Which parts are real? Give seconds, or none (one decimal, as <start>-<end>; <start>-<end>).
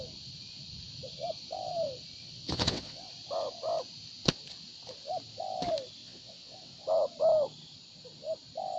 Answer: 0.0-2.2; 3.1-6.0; 6.8-8.8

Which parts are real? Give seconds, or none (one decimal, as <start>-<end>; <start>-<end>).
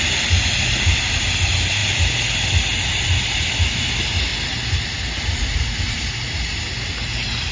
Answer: 0.0-7.5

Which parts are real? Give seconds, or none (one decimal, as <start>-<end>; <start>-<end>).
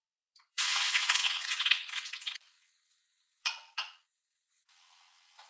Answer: none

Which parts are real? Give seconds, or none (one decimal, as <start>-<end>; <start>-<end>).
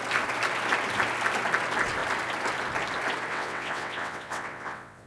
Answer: 0.0-3.3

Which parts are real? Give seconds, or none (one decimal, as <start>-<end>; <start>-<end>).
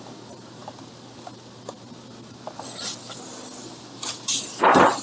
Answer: 0.0-5.0